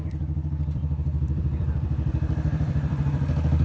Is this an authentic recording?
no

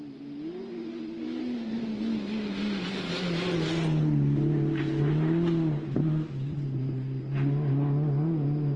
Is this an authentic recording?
yes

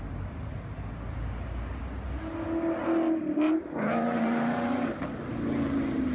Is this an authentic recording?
yes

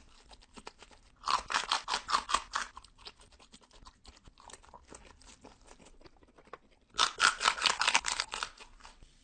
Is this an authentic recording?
yes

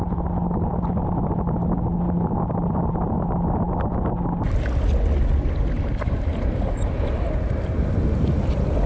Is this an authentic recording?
yes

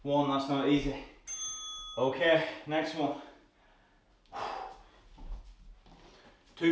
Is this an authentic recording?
yes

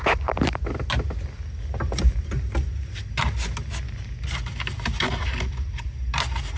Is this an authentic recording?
yes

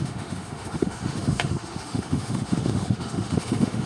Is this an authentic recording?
no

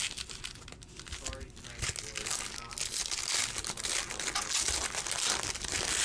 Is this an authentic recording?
yes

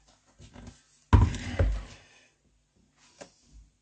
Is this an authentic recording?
yes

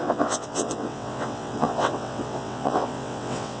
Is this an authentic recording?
no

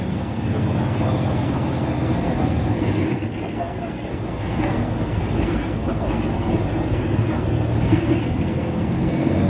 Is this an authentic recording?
no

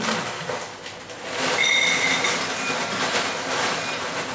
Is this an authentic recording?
yes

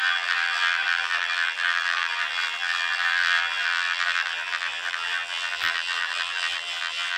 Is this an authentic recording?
no